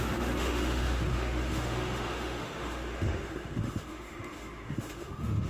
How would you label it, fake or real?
fake